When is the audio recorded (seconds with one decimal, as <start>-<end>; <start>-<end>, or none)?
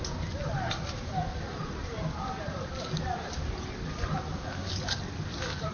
0.0-5.7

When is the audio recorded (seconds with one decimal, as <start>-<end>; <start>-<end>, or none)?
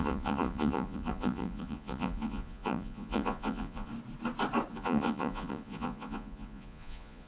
3.9-4.7